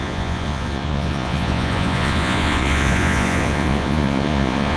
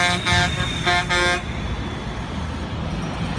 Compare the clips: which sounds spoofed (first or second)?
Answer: first